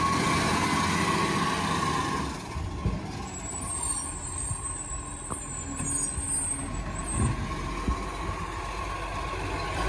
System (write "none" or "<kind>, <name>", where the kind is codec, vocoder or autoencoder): none